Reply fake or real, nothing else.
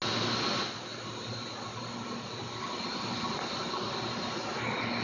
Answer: real